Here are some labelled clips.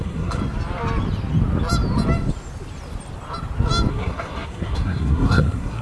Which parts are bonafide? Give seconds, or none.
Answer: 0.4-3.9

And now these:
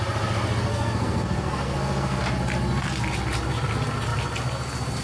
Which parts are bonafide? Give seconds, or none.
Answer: 0.0-0.7; 2.2-5.0

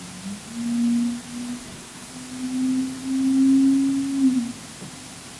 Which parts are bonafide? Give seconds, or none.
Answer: 0.0-1.6; 2.1-5.4

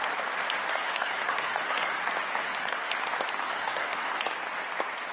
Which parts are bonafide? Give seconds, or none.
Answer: 0.0-0.7; 2.0-2.4; 2.9-3.4; 4.2-5.1

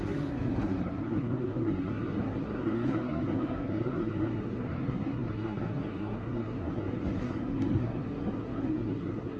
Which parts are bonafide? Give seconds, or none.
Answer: none

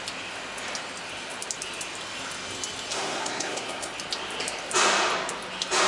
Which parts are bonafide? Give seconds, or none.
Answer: 0.0-2.9; 3.9-5.9

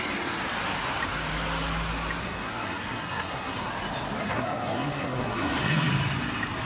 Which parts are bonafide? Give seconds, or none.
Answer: 0.0-2.2; 3.7-4.2; 5.9-6.7

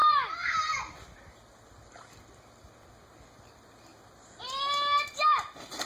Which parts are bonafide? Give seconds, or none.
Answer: 0.0-5.9